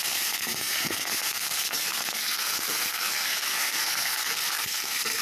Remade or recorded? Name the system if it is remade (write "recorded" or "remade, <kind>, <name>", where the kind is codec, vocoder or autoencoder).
remade, codec, SNAC